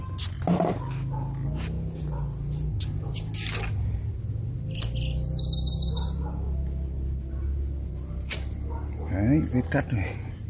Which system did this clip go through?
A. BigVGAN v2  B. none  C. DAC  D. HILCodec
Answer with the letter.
B